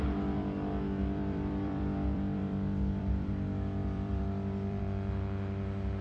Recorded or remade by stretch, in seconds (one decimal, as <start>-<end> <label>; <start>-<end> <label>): 0.0-1.0 recorded; 1.0-3.3 remade; 3.3-3.8 recorded; 3.8-4.8 remade; 4.8-6.0 recorded